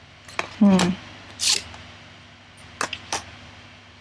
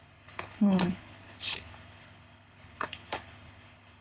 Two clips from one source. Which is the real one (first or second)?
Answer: first